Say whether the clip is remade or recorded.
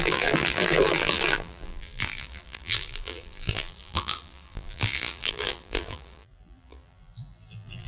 remade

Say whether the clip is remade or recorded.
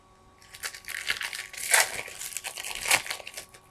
recorded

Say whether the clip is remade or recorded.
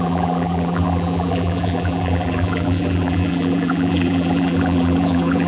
remade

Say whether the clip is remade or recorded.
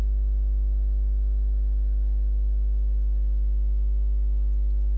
recorded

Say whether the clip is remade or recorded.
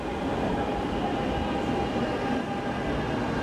recorded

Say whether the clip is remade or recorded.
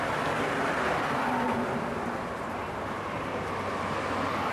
recorded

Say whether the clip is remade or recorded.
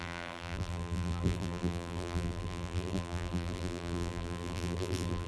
remade